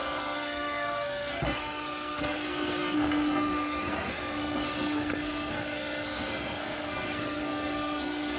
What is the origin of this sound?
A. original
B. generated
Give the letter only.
B